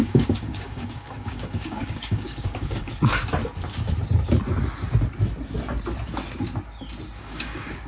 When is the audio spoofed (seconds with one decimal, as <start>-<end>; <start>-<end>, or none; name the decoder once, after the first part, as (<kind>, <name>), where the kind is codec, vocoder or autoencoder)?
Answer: 0.0-2.9 (codec, DAC); 7.2-7.9